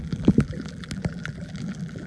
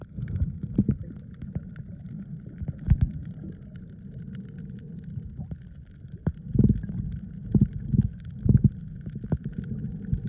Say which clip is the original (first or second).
second